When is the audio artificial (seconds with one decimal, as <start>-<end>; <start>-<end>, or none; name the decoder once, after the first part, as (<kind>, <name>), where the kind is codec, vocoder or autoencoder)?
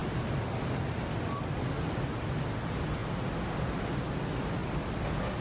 none